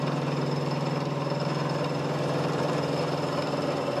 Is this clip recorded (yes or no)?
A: no